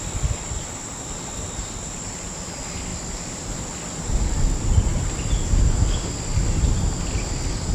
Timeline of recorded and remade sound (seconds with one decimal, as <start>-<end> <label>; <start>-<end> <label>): 0.0-7.7 recorded